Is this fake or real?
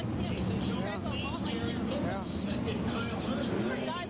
real